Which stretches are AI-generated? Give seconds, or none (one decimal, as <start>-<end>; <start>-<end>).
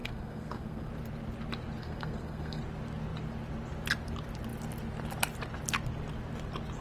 0.0-0.9; 1.8-2.6